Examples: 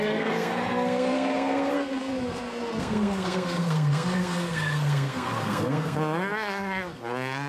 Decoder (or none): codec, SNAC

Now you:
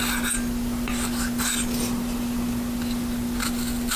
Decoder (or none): none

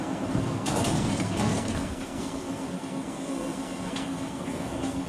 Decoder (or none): codec, SNAC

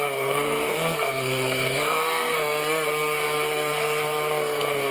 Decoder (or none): codec, SNAC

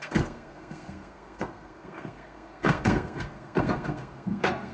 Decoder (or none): codec, SNAC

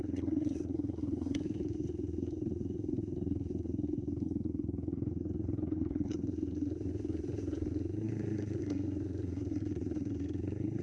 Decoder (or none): codec, SNAC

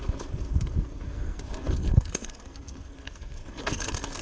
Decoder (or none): codec, SNAC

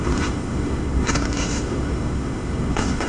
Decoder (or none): codec, SNAC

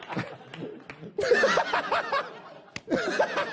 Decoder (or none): none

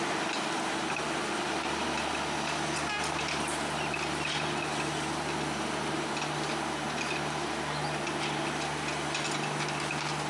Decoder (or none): none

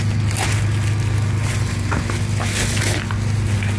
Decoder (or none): none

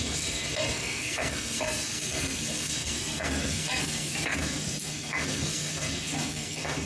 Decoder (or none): codec, SNAC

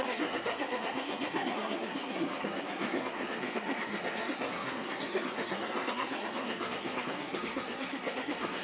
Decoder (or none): codec, SNAC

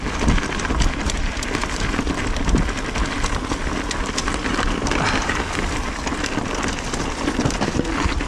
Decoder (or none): none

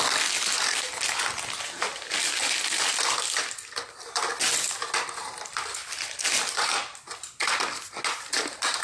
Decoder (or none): none